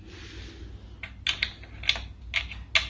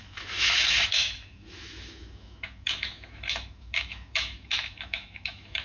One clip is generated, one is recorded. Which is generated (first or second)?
second